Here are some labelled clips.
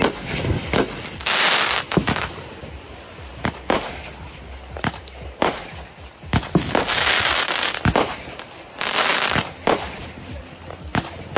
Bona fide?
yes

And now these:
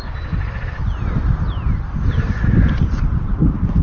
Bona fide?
yes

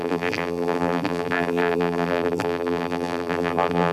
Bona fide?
no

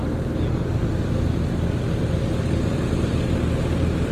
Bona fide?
yes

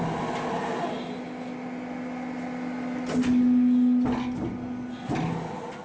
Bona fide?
yes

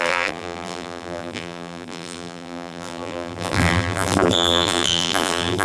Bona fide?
no